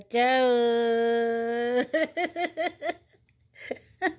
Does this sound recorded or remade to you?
recorded